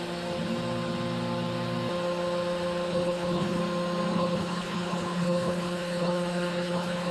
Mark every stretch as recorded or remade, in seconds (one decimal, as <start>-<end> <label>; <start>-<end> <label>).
0.0-2.9 recorded; 2.9-3.6 remade; 3.6-4.1 recorded; 4.1-7.1 remade